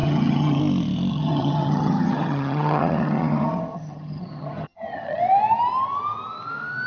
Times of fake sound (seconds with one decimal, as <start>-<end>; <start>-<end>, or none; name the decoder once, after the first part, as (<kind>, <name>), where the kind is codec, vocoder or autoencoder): 0.0-0.6 (vocoder, HiFi-GAN); 1.1-5.2